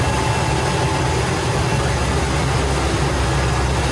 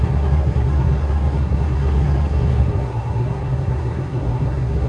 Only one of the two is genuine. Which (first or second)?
first